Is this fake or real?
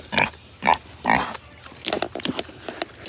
real